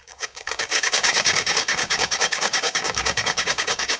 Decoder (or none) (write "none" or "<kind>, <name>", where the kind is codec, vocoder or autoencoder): codec, DAC